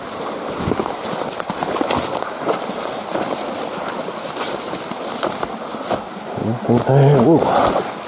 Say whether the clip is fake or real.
real